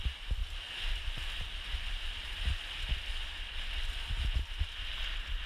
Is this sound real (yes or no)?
yes